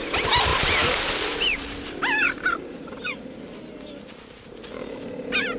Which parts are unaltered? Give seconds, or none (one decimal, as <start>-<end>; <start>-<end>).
0.0-0.5; 3.9-5.6